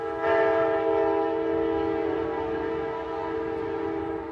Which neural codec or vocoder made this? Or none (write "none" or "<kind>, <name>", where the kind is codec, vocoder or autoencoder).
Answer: none